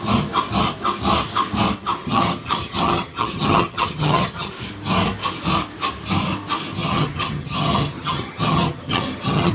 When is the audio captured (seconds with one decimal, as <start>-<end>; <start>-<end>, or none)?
0.0-2.0; 4.5-6.8